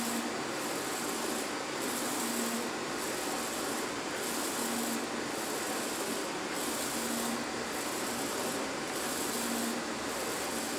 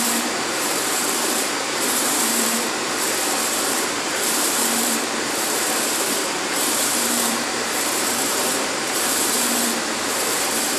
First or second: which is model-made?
second